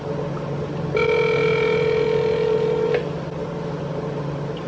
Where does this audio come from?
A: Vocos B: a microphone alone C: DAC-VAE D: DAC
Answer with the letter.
B